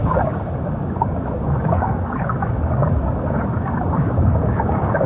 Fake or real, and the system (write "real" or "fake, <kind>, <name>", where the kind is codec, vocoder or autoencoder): fake, codec, DAC